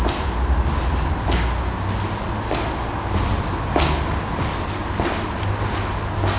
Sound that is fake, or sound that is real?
real